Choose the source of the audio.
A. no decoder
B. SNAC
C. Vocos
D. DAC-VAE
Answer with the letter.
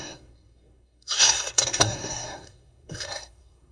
B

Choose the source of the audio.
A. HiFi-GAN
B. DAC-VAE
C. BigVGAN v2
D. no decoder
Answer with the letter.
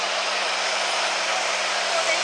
D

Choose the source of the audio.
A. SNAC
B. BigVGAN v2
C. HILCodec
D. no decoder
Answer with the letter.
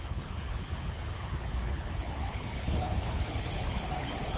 C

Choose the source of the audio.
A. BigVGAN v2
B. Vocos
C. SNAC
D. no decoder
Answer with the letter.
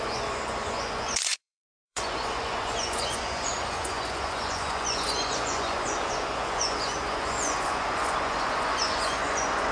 B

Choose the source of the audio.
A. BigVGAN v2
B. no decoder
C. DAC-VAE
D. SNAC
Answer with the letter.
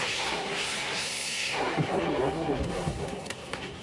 D